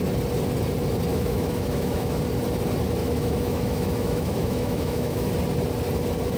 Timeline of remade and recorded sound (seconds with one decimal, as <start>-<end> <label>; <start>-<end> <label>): 0.0-1.1 recorded; 1.1-2.2 remade; 2.2-3.0 recorded; 3.0-5.3 remade; 5.3-6.4 recorded